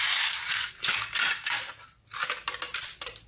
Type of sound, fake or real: real